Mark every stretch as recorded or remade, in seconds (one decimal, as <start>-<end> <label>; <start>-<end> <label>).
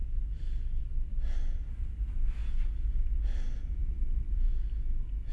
0.0-3.8 recorded; 3.8-4.5 remade; 4.5-5.3 recorded